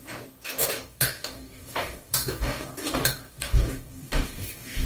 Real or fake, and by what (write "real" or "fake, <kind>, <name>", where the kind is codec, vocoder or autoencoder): fake, codec, DAC